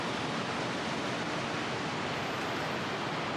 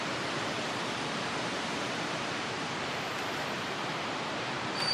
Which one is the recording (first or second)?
first